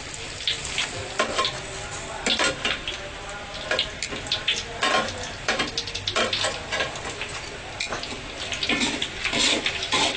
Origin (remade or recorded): recorded